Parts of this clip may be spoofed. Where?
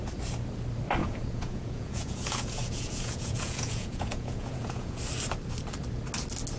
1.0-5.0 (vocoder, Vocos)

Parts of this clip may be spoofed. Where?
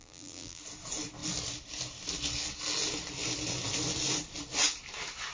0.0-0.6 (vocoder, BigVGAN v2)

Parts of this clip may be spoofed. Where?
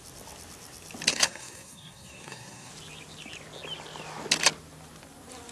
1.1-2.7 (codec, SNAC)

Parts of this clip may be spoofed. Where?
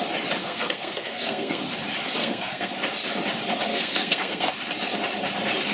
0.4-1.6 (codec, SNAC); 2.2-2.7; 3.7-4.5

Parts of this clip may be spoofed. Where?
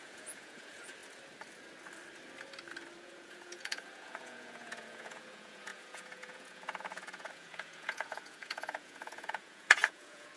0.0-1.0 (vocoder, Vocos); 3.0-10.4